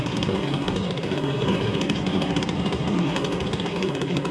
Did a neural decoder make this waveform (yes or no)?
yes